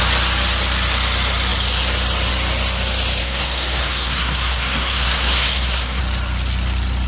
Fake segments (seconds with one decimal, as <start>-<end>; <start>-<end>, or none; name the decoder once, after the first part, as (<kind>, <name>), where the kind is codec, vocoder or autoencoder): 3.2-6.0 (codec, SNAC)